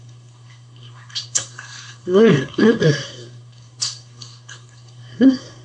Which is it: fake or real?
fake